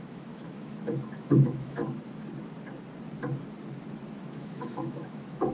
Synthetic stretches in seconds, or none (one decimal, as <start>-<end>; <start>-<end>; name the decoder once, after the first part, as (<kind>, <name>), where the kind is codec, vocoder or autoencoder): 0.0-1.8 (autoencoder, DAC-VAE); 4.2-5.5